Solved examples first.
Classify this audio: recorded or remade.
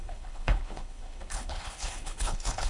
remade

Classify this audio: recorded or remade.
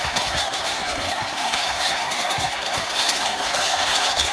remade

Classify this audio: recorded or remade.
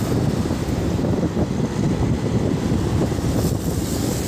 remade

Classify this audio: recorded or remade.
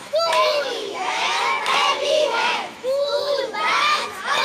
remade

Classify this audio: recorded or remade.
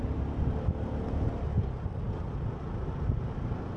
recorded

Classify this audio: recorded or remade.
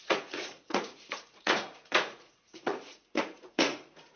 remade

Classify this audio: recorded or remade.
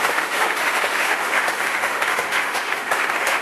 remade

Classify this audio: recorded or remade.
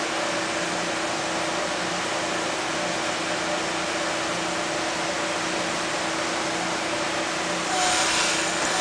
recorded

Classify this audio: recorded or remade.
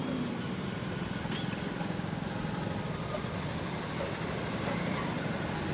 recorded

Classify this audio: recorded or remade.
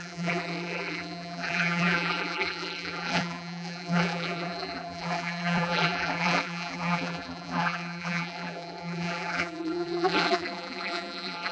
remade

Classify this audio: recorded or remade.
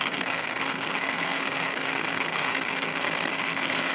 remade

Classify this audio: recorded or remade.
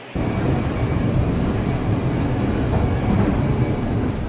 remade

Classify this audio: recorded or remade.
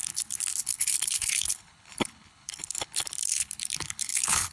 remade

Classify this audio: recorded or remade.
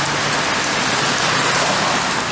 recorded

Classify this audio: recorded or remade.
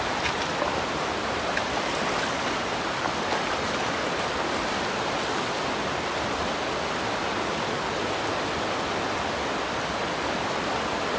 recorded